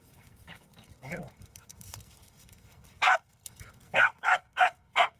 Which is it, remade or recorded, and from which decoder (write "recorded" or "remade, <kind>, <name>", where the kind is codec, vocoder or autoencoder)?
remade, codec, SNAC